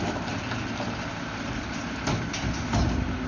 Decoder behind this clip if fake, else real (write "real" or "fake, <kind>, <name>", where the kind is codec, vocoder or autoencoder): real